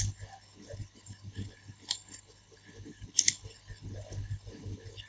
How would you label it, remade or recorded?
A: remade